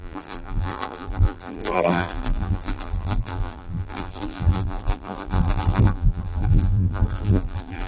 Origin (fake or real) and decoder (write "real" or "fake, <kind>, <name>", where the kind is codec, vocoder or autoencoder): fake, vocoder, BigVGAN v2